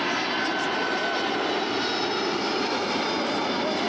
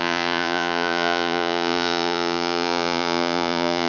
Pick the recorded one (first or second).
first